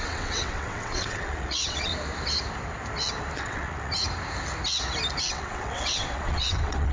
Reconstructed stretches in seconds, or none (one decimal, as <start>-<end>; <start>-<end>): 0.0-1.9; 3.4-3.9; 5.3-6.9